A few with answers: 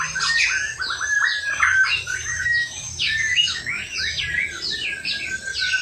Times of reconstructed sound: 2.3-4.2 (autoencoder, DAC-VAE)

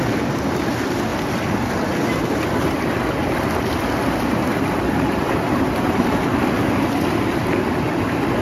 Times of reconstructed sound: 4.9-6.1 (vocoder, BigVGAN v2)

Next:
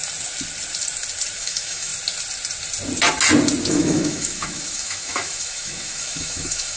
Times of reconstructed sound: 1.4-1.9 (autoencoder, DAC-VAE); 3.7-6.8